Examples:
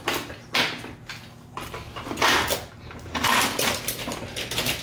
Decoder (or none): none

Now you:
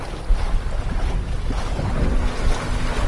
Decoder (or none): none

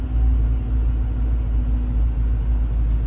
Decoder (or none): none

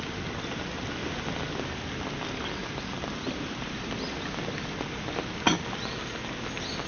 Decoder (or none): none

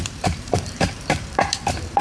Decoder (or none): vocoder, BigVGAN v2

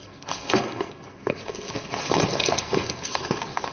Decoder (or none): codec, SNAC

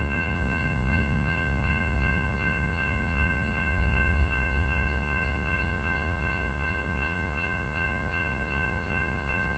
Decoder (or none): vocoder, Vocos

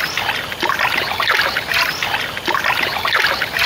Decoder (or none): none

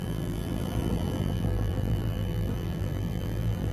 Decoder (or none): vocoder, BigVGAN v2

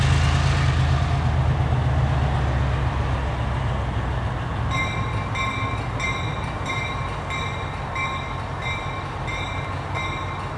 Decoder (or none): none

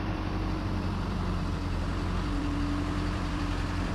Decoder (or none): vocoder, BigVGAN v2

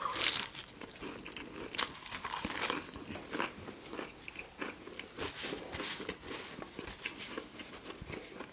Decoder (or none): none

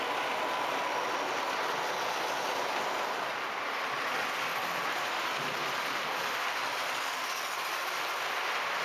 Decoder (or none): none